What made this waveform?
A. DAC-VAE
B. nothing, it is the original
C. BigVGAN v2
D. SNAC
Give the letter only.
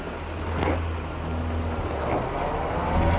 B